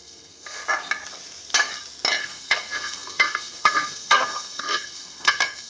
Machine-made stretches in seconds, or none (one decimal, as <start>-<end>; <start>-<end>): 0.0-0.6; 2.2-5.7